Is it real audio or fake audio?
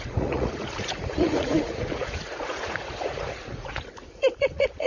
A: fake